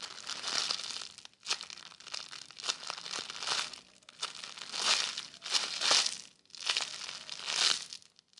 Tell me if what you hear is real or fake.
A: real